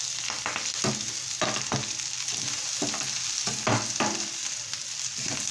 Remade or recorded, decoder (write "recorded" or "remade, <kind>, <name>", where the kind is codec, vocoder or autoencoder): recorded